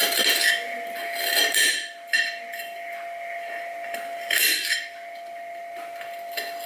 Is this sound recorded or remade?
recorded